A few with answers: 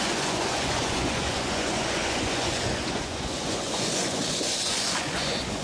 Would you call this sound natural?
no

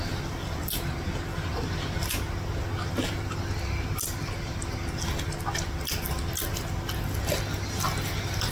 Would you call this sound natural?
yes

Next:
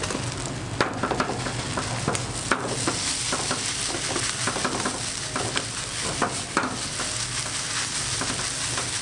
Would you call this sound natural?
yes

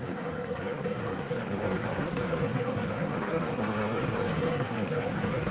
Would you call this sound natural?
no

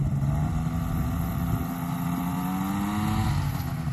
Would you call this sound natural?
yes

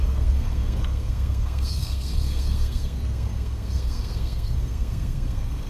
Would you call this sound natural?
no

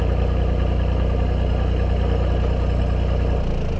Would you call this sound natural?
yes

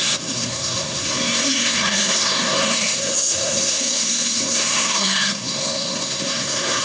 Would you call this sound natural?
no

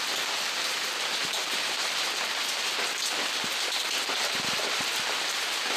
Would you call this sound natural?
yes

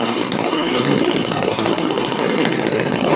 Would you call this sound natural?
no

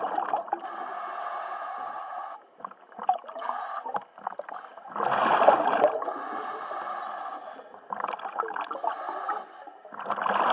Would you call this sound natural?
yes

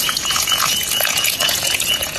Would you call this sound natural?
no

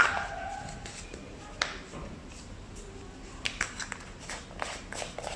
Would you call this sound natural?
yes